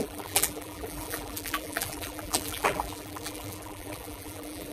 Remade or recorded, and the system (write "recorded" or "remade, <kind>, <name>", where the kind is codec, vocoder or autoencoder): remade, vocoder, BigVGAN v2